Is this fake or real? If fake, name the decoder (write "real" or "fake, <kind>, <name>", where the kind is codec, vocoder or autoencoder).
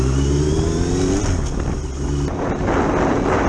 real